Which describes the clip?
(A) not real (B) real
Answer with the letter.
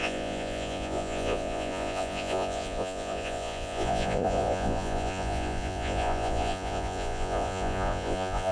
A